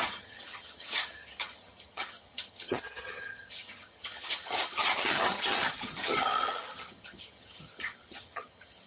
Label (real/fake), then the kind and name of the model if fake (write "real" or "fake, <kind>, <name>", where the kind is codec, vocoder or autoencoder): fake, vocoder, HiFi-GAN